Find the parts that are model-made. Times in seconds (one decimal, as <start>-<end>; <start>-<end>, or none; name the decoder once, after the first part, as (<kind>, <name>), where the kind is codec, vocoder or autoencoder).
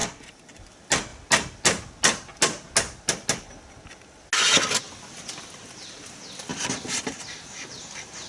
none